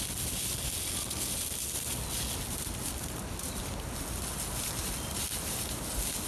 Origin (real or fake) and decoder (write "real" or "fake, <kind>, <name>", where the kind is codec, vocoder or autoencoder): real